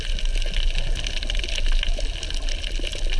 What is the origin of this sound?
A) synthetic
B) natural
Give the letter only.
B